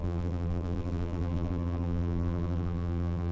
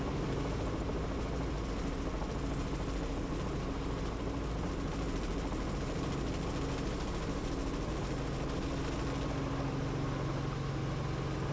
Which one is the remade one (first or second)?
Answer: first